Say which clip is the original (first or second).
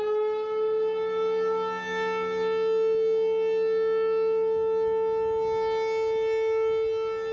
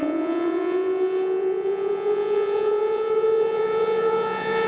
first